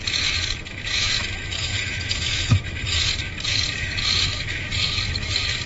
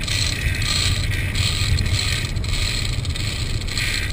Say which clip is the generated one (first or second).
first